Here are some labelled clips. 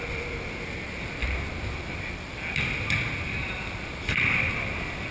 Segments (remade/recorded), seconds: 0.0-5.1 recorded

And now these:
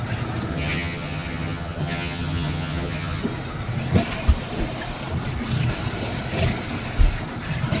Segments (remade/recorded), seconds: 0.0-0.5 recorded; 0.5-3.2 remade; 3.2-7.8 recorded

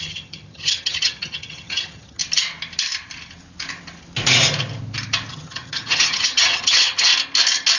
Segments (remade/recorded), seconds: 0.0-2.2 remade; 2.2-5.3 recorded; 5.3-7.1 remade; 7.1-7.8 recorded

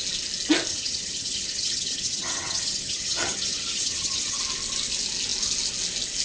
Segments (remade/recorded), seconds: 0.0-0.7 recorded; 0.7-4.4 remade; 4.4-6.2 recorded

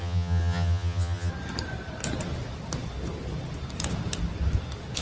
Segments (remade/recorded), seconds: 0.0-1.3 remade; 1.3-5.0 recorded

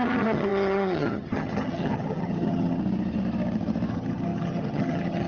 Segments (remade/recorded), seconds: 0.0-2.8 remade; 2.8-3.9 recorded; 3.9-5.3 remade

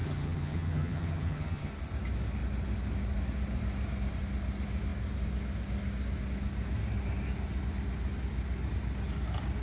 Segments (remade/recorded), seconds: 0.0-1.7 remade; 1.7-9.6 recorded